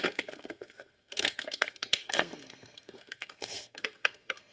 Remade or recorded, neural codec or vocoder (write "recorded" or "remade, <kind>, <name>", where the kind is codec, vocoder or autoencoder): remade, codec, SNAC